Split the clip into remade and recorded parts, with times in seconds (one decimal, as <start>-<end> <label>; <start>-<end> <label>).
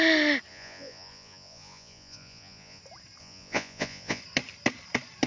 0.0-0.5 recorded; 0.5-2.8 remade; 2.8-3.2 recorded; 3.2-4.2 remade; 4.2-5.3 recorded